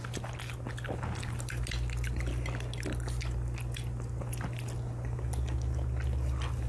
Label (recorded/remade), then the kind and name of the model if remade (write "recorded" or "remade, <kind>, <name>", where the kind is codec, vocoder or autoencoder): recorded